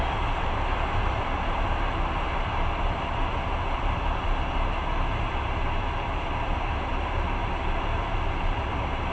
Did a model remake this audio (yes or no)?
no